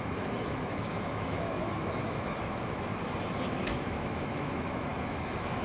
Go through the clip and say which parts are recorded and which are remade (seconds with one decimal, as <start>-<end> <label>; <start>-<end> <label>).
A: 0.0-2.9 remade; 2.9-3.4 recorded; 3.4-5.6 remade